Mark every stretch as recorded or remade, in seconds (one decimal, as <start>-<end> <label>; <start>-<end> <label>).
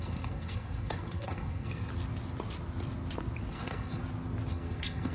0.0-1.9 remade; 1.9-3.5 recorded; 3.5-4.0 remade; 4.0-4.5 recorded; 4.5-5.1 remade